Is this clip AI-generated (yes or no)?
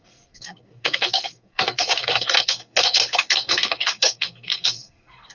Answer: yes